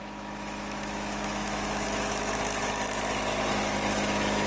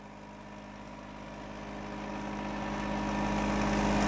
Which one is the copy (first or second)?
first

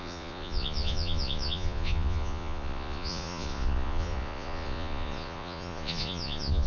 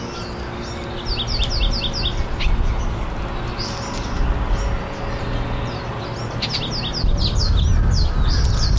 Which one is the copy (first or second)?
first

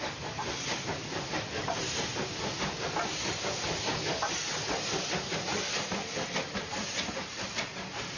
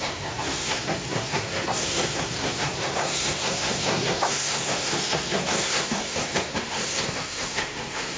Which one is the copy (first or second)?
second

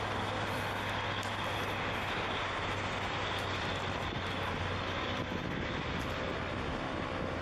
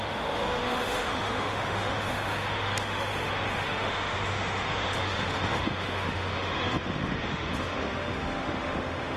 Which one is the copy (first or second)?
second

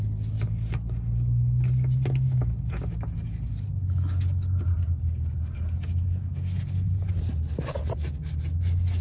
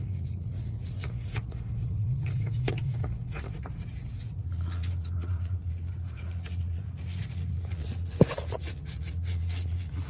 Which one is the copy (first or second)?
second